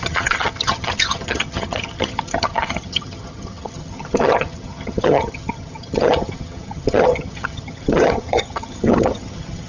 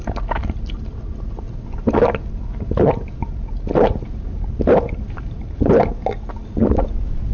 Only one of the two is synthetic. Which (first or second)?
first